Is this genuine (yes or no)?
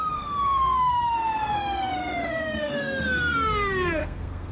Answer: no